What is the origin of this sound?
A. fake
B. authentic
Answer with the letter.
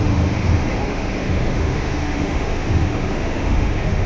A